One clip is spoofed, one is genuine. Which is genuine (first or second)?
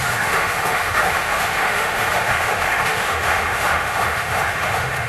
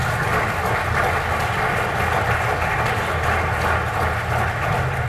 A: second